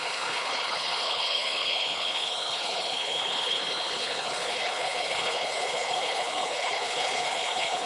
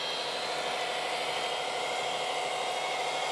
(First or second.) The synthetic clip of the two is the first